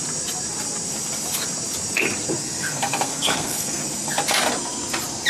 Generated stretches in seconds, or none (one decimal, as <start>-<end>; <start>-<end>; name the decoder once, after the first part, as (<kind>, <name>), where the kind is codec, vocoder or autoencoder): 2.4-3.8 (codec, SNAC)